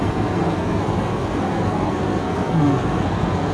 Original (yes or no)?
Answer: no